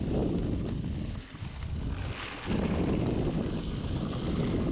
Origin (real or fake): real